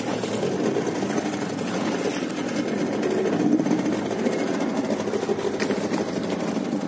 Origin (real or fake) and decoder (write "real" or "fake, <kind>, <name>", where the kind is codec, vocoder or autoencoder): real